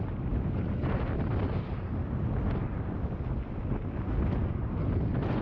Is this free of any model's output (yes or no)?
yes